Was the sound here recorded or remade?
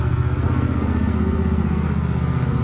remade